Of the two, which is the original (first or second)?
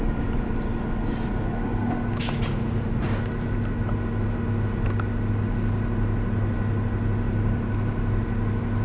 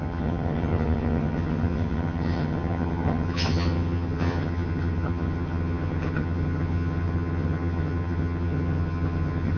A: first